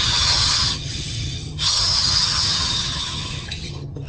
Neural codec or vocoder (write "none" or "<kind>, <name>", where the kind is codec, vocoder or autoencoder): vocoder, HiFi-GAN